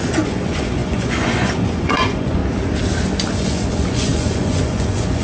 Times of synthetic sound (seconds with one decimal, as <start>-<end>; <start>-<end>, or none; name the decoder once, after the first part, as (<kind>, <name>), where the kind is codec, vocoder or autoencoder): 0.0-2.4 (vocoder, Vocos); 3.3-5.2